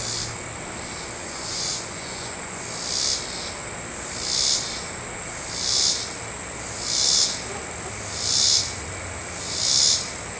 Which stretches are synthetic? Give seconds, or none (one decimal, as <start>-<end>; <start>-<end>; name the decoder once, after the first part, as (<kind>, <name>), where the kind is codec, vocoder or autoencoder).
1.2-2.6 (vocoder, Vocos)